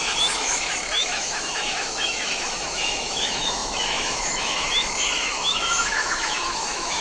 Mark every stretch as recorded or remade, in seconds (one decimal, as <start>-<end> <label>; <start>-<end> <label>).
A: 0.0-7.0 remade

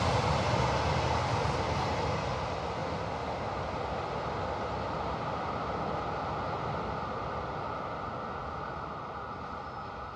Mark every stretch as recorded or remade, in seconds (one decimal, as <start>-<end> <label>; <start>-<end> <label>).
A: 0.0-10.2 recorded

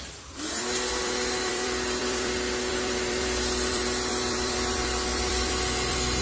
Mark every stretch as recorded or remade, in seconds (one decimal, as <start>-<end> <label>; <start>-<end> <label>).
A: 0.0-6.2 remade

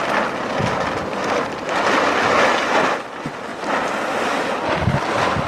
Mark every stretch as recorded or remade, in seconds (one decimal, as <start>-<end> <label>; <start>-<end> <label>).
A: 0.0-5.5 recorded

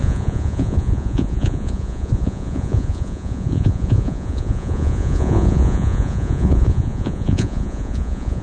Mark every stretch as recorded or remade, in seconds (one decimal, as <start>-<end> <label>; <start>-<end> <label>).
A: 0.0-8.4 remade

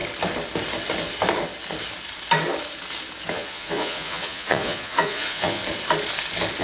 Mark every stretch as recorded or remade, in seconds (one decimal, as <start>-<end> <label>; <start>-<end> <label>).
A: 0.0-3.3 recorded; 3.3-5.6 remade; 5.6-6.6 recorded